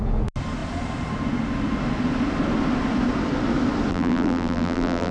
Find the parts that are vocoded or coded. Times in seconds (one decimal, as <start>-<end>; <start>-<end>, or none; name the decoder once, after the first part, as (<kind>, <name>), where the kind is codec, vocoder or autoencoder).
3.9-5.1 (vocoder, BigVGAN v2)